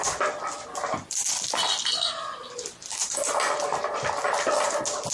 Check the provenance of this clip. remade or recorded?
recorded